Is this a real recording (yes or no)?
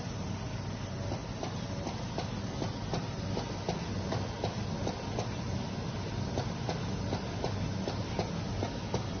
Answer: yes